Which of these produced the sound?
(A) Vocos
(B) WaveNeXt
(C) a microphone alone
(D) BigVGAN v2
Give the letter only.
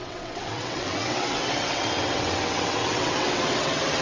B